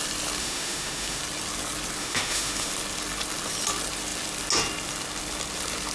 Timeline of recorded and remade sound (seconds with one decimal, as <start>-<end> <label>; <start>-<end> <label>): 0.0-0.4 recorded; 0.4-1.2 remade; 1.2-2.0 recorded; 2.0-2.7 remade; 2.7-5.9 recorded